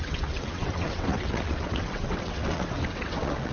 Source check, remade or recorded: remade